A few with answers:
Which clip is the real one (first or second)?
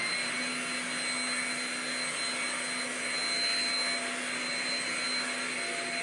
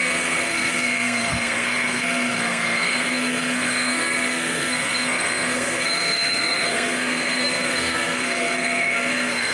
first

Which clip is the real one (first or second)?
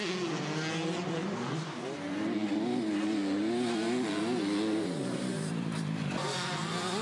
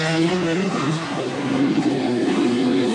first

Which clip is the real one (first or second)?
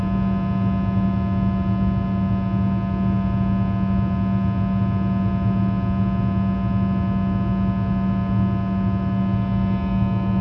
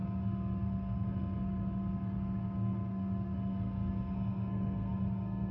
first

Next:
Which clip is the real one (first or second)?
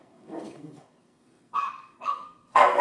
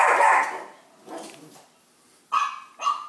second